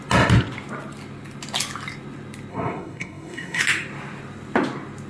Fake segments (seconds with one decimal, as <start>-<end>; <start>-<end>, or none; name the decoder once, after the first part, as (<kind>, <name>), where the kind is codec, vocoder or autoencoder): 2.5-3.6 (codec, SNAC)